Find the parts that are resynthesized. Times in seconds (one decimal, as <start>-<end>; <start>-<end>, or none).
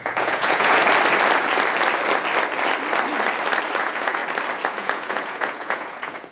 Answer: 0.0-0.8; 3.8-4.2; 4.7-6.3